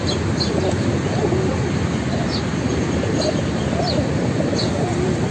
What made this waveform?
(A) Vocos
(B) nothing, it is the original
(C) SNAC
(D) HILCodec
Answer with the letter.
B